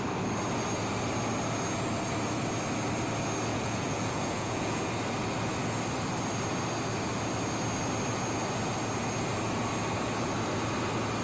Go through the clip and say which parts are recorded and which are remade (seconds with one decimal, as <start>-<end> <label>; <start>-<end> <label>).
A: 0.0-3.5 recorded; 3.5-4.8 remade; 4.8-11.2 recorded